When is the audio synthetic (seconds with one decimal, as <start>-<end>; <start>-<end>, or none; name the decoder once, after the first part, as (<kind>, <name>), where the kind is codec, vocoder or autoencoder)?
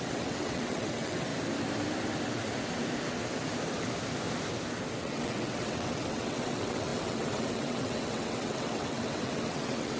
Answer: 0.0-1.3 (vocoder, WaveNeXt); 5.0-10.0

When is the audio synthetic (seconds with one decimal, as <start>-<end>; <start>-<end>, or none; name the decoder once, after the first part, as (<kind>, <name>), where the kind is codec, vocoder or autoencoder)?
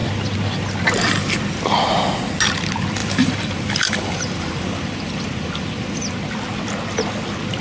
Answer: 3.0-6.1 (vocoder, BigVGAN v2)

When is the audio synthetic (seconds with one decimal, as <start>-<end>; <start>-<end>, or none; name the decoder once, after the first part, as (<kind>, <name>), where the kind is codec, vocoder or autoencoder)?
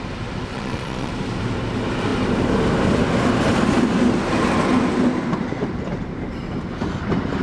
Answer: 0.5-1.1 (vocoder, Vocos)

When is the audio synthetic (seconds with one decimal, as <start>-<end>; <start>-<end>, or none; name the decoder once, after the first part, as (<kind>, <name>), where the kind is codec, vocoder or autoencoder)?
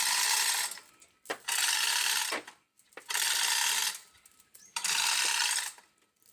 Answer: none